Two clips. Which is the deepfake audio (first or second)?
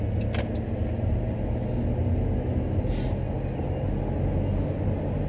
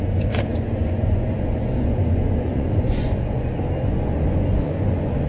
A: second